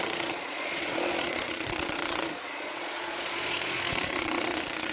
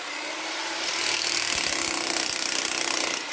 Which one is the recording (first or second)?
second